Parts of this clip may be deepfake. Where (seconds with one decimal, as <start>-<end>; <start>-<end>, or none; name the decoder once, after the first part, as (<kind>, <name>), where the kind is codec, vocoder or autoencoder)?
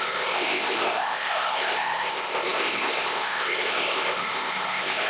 0.0-5.1 (codec, ZipCodec)